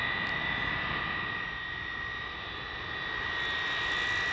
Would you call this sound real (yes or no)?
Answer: yes